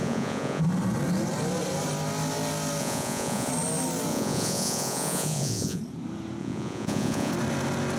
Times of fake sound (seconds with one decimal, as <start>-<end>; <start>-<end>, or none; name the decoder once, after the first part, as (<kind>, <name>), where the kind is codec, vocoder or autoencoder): 0.0-0.6 (vocoder, Vocos); 2.8-3.5; 4.1-5.8; 6.4-7.3